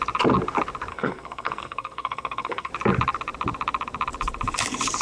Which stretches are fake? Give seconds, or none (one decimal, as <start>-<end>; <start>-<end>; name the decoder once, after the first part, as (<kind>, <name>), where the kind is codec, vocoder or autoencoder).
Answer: 0.9-2.7 (codec, SNAC)